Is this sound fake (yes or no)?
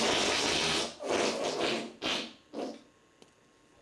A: no